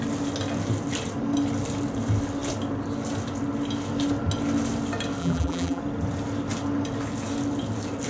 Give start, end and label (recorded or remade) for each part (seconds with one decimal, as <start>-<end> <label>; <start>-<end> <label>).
0.0-5.2 recorded; 5.2-5.8 remade; 5.8-8.1 recorded